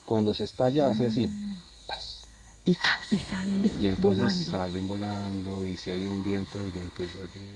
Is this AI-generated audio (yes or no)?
yes